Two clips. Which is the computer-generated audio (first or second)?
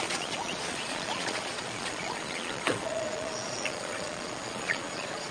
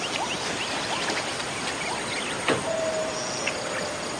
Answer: first